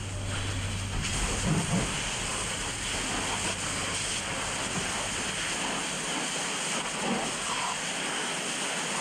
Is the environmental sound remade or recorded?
recorded